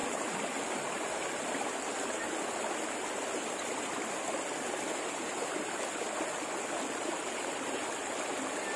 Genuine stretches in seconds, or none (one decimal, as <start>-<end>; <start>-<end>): 3.8-8.8